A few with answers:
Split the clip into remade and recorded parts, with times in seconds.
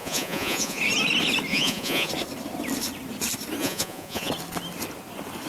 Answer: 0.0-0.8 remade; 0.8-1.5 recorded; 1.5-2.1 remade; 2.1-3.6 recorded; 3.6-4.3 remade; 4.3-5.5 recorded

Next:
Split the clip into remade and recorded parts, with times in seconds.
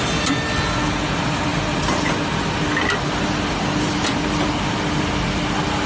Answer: 0.0-5.9 recorded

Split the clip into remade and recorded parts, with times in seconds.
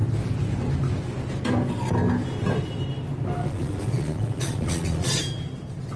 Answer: 0.0-3.4 recorded; 3.4-5.2 remade; 5.2-6.0 recorded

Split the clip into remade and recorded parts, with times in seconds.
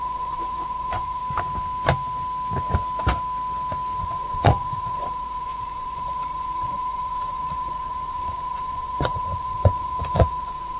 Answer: 0.0-1.2 remade; 1.2-4.0 recorded; 4.0-10.8 remade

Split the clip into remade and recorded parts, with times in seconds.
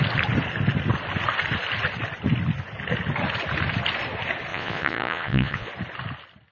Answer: 0.0-4.5 recorded; 4.5-5.7 remade; 5.7-6.5 recorded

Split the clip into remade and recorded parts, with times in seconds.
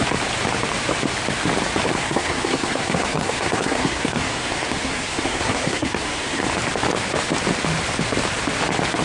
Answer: 0.0-1.9 recorded; 1.9-6.4 remade; 6.4-9.0 recorded